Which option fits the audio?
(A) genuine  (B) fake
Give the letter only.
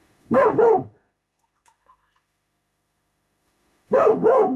B